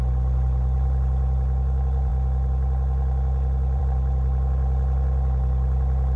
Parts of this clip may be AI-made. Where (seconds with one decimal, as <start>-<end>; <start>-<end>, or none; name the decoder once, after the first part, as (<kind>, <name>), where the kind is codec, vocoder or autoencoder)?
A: none